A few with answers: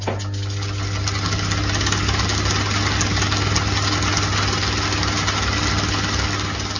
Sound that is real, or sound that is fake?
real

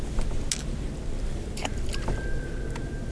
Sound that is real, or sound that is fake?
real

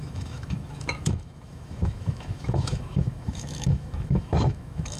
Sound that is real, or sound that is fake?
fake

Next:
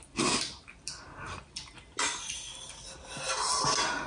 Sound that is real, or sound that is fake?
real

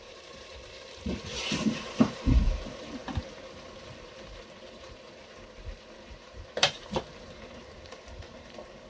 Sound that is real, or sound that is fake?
fake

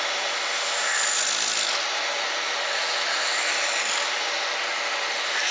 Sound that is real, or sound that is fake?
real